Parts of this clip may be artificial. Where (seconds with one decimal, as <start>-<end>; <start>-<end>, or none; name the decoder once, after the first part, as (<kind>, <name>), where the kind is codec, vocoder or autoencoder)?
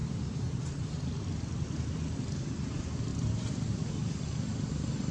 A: 0.0-1.0 (vocoder, BigVGAN v2); 3.1-4.1